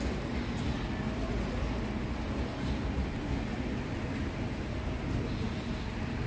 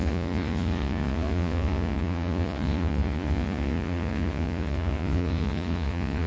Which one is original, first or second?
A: first